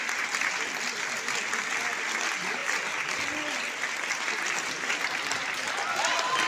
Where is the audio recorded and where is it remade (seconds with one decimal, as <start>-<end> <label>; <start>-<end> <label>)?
0.0-6.5 recorded